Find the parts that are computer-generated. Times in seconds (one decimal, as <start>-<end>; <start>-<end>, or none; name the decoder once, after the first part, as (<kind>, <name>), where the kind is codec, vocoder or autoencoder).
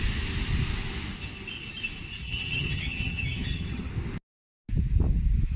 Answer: 2.2-3.9 (vocoder, HiFi-GAN)